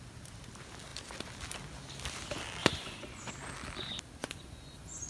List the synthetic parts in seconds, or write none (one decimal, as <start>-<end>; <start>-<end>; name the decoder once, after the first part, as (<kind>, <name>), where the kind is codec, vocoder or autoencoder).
2.6-3.3 (vocoder, Vocos); 4.2-5.1

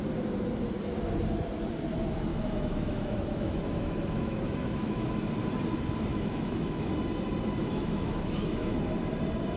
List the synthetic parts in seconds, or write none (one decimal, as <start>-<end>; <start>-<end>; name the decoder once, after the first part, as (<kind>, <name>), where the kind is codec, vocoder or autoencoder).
2.3-5.3 (autoencoder, DAC-VAE); 6.1-6.9; 7.6-8.8

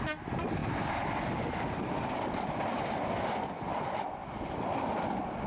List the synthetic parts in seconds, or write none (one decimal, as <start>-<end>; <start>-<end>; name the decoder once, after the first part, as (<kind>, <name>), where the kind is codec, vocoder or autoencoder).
4.2-5.5 (vocoder, BigVGAN v2)

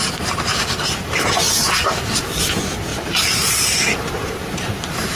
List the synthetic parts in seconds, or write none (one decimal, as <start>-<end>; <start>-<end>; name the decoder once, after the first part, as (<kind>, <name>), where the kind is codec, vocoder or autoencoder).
0.5-1.3 (vocoder, BigVGAN v2); 2.9-5.2